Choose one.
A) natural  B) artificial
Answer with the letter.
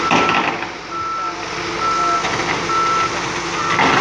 A